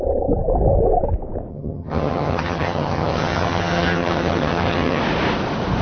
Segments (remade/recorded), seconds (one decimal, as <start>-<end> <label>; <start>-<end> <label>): 0.0-1.5 recorded; 1.5-5.0 remade; 5.0-5.8 recorded